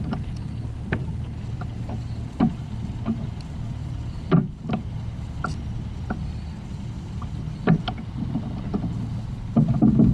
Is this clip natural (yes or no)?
yes